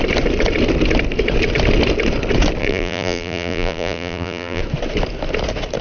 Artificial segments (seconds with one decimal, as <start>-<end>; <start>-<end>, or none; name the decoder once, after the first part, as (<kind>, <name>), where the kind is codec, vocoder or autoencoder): 2.6-4.6 (vocoder, BigVGAN v2)